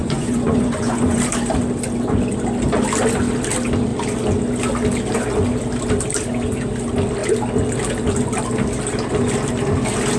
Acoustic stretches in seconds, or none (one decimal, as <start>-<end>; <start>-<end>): 1.2-10.2